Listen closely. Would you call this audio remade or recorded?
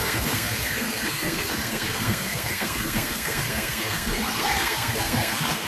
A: remade